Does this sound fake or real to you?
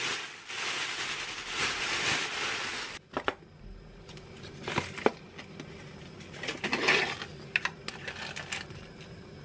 real